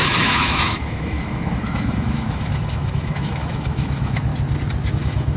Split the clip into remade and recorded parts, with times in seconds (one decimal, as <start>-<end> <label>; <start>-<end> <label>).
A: 0.0-4.3 remade; 4.3-4.9 recorded; 4.9-5.4 remade